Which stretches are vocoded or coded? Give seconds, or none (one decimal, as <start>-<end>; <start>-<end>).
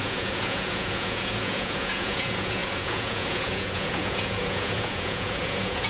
0.0-5.9